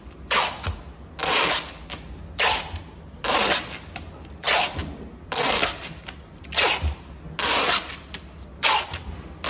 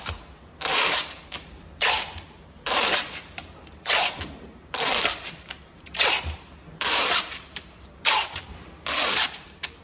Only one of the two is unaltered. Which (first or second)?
first